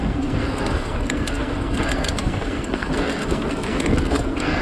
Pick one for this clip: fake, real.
fake